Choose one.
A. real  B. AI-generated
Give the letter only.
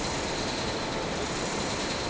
A